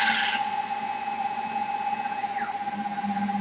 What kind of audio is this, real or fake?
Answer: real